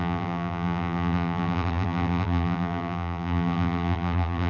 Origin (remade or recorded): remade